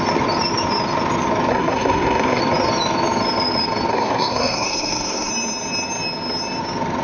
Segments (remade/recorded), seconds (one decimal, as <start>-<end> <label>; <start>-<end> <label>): 0.0-1.5 recorded; 1.5-2.4 remade; 2.4-3.9 recorded; 3.9-5.3 remade; 5.3-7.0 recorded